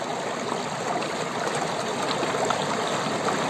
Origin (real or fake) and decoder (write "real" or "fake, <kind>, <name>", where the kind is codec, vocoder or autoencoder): real